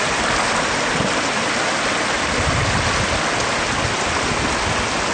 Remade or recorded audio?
recorded